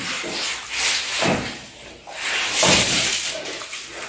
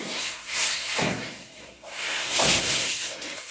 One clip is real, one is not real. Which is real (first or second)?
first